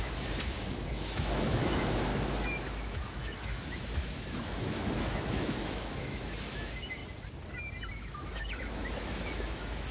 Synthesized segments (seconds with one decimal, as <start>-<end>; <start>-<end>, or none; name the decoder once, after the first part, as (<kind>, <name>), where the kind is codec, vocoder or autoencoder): 0.0-7.0 (autoencoder, DAC-VAE); 7.9-9.9